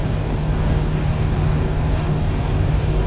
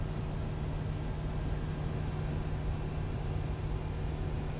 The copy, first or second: first